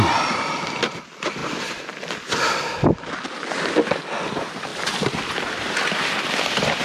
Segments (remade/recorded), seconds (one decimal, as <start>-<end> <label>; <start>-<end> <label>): 0.0-1.4 remade; 1.4-4.2 recorded; 4.2-6.8 remade